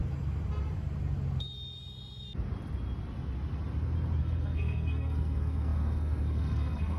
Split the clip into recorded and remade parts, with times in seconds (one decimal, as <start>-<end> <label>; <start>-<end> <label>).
0.0-4.2 recorded; 4.2-7.0 remade